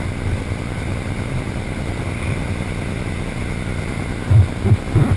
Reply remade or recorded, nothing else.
recorded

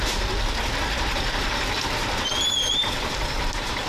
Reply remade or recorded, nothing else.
recorded